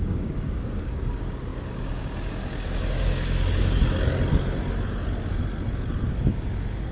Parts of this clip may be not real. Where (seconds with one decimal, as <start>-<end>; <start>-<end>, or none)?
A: 0.0-3.8; 6.3-6.9